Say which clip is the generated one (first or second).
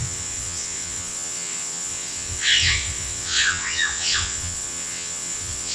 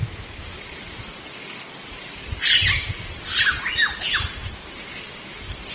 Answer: first